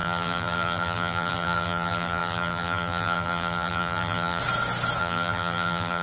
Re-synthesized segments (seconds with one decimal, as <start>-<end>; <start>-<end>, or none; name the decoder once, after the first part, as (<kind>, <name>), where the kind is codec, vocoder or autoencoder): 0.0-4.4 (vocoder, BigVGAN v2); 5.0-6.0